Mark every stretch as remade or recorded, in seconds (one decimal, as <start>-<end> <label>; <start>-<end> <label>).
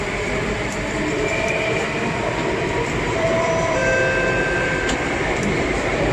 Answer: 0.0-3.8 remade; 3.8-4.4 recorded; 4.4-6.1 remade